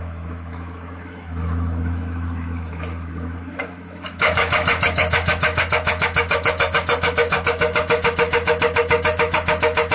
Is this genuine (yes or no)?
no